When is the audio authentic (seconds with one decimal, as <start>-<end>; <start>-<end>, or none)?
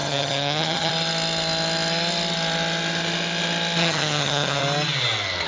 0.9-3.8; 4.6-5.5